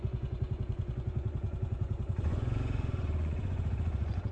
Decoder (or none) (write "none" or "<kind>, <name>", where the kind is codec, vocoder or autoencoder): vocoder, Vocos